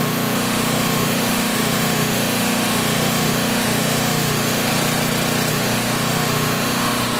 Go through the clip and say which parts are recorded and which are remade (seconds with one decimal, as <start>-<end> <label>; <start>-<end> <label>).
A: 0.0-4.7 remade; 4.7-5.5 recorded; 5.5-7.2 remade